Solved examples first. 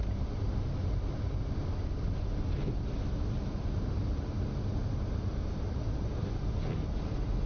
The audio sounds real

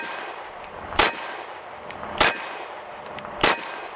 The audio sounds fake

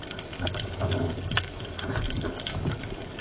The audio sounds fake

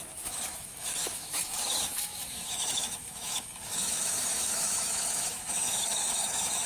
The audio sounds fake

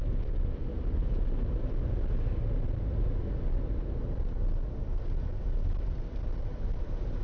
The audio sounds real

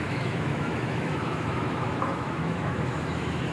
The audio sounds fake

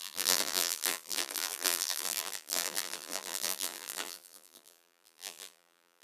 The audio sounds fake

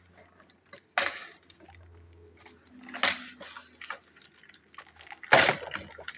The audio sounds real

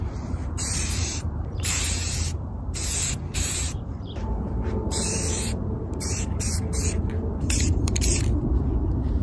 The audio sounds fake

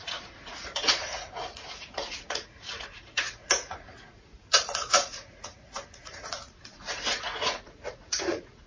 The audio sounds fake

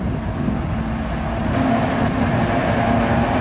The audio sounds real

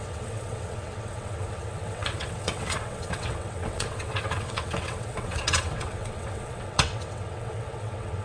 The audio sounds fake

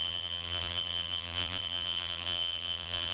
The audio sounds fake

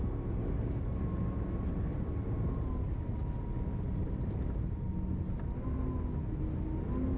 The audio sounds real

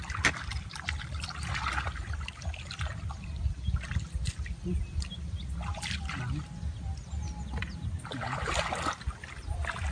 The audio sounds real